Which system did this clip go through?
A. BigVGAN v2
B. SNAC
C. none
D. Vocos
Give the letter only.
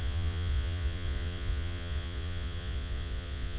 D